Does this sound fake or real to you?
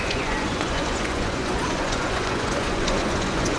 fake